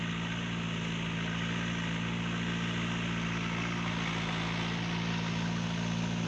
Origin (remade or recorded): recorded